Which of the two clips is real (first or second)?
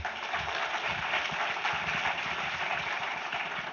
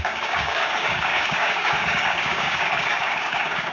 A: first